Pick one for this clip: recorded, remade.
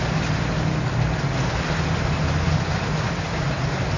recorded